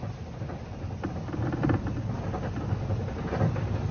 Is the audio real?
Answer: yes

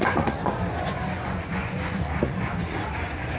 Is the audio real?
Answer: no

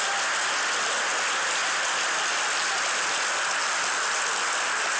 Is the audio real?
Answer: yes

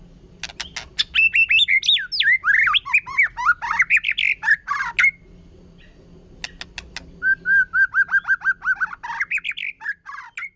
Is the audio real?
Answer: yes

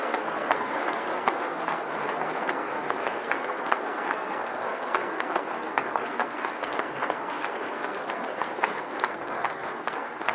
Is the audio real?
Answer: no